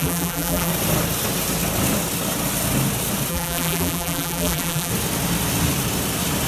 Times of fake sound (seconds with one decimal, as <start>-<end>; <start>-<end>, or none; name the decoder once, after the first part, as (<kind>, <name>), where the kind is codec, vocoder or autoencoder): 0.0-0.7 (vocoder, BigVGAN v2); 3.3-4.9